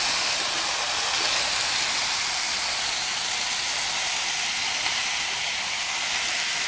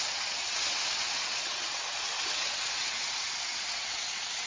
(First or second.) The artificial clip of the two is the second